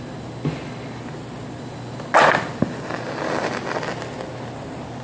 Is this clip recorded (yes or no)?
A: yes